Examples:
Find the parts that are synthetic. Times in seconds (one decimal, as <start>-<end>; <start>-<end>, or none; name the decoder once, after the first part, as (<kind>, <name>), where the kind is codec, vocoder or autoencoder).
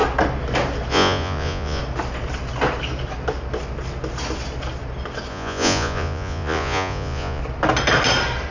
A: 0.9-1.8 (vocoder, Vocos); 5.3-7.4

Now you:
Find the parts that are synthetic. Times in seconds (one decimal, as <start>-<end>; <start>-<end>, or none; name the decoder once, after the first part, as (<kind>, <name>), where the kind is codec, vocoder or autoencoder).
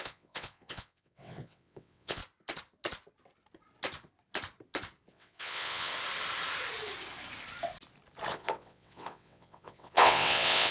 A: 0.0-2.2 (vocoder, WaveNeXt); 5.1-5.9; 8.3-10.7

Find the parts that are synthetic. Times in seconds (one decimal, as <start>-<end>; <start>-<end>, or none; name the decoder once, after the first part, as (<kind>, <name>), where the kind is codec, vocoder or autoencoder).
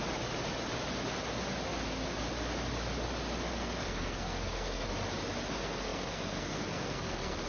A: 3.5-4.9 (codec, SNAC); 5.5-7.5